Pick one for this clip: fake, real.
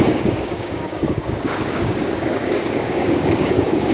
fake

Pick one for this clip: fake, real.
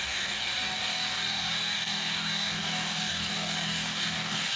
fake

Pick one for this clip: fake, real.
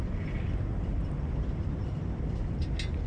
real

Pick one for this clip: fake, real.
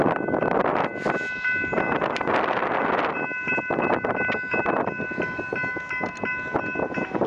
real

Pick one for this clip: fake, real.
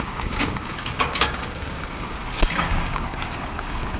fake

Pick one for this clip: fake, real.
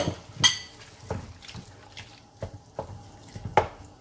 real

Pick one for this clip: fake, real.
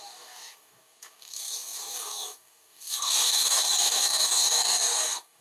fake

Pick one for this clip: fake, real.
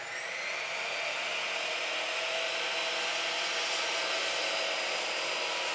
real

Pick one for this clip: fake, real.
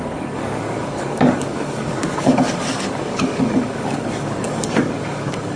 fake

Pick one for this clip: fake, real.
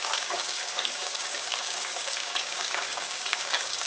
fake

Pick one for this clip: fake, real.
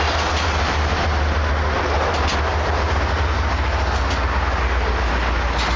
real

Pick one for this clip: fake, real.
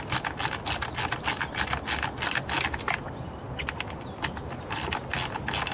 real